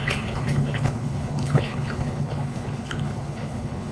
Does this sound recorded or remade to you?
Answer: remade